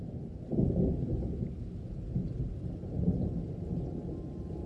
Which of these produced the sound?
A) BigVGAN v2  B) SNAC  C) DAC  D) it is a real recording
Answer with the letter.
D